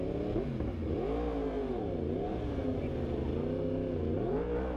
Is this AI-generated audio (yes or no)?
no